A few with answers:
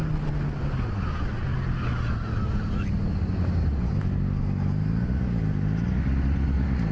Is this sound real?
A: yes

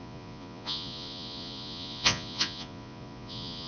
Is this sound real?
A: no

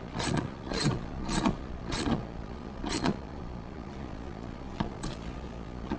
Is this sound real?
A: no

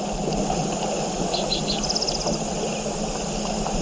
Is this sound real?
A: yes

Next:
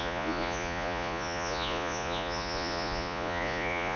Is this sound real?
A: no